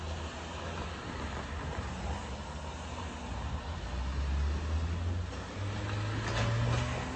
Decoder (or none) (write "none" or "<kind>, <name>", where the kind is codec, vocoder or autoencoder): none